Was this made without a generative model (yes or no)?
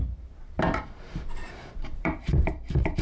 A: no